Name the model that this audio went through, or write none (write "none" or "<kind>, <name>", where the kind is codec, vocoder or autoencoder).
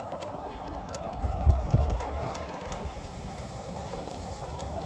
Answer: codec, SNAC